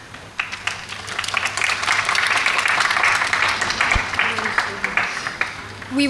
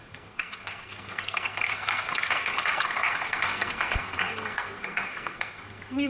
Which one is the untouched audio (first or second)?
first